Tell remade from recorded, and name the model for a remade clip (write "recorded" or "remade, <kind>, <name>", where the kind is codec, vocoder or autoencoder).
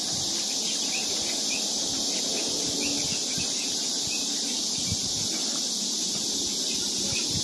recorded